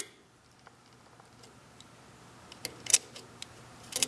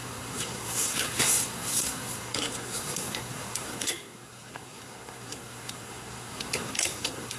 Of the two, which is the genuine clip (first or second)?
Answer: first